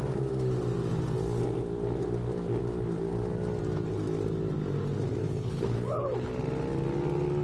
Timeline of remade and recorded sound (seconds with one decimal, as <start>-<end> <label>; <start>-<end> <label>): 0.0-5.2 recorded; 5.2-6.3 remade; 6.3-7.4 recorded